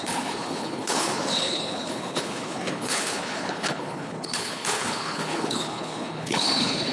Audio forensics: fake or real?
fake